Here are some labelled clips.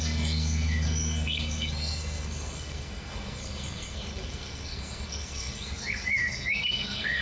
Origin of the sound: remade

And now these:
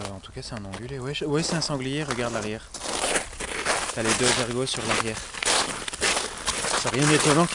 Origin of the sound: recorded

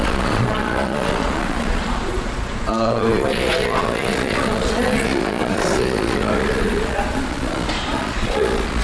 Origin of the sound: remade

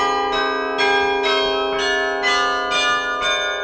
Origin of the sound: recorded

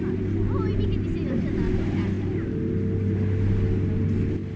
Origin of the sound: recorded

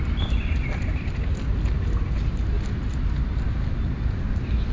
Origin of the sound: recorded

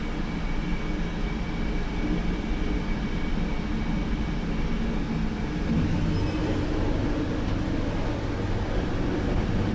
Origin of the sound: recorded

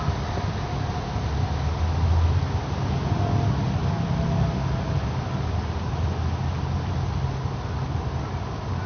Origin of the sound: recorded